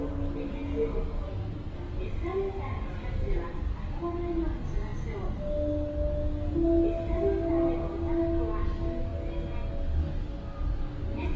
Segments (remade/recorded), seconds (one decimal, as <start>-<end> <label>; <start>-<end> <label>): 0.0-11.4 recorded